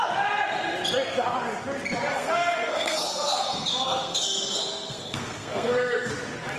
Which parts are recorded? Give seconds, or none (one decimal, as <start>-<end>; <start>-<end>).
0.0-2.1; 6.1-6.6